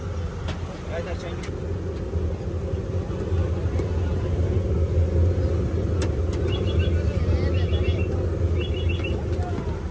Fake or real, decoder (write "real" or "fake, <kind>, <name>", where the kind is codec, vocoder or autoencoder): real